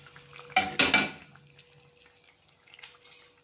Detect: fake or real real